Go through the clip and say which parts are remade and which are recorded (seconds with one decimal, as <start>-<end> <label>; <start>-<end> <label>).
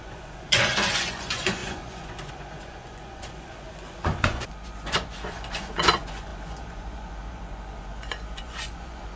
0.0-9.2 remade